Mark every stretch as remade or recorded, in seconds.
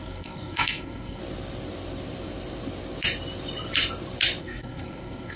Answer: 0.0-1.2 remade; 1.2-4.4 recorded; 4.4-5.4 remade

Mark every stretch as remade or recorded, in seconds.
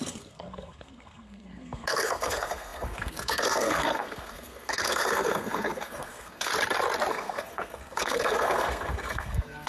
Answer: 0.0-6.5 remade; 6.5-7.1 recorded; 7.1-9.7 remade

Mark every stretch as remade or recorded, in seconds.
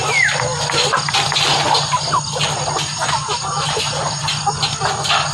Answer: 0.0-5.3 recorded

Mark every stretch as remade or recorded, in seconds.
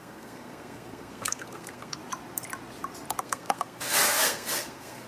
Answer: 0.0-2.0 remade; 2.0-3.2 recorded; 3.2-5.1 remade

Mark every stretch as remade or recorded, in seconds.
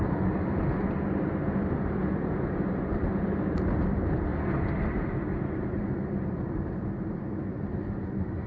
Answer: 0.0-8.5 recorded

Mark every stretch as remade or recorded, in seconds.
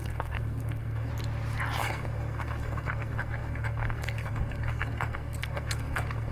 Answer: 0.0-1.1 remade; 1.1-1.8 recorded; 1.8-6.3 remade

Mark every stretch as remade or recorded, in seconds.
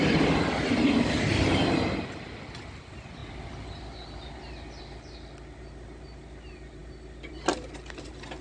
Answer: 0.0-8.4 recorded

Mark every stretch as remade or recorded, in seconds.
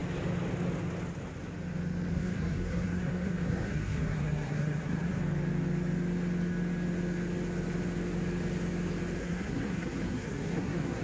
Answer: 0.0-2.1 recorded; 2.1-5.2 remade; 5.2-9.2 recorded; 9.2-11.0 remade